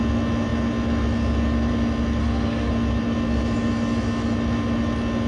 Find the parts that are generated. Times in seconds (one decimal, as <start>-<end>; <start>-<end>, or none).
2.2-2.7